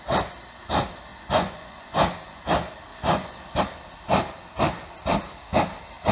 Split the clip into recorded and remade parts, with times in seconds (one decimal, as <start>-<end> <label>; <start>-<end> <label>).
0.0-1.1 recorded; 1.1-2.4 remade; 2.4-2.9 recorded; 2.9-3.6 remade; 3.6-6.1 recorded